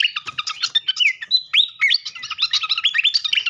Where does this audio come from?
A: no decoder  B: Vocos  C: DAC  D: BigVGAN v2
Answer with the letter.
A